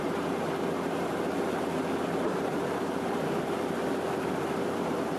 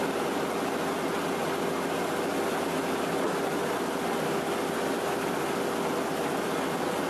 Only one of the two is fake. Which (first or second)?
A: first